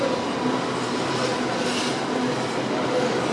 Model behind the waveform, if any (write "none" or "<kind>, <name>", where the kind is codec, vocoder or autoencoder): none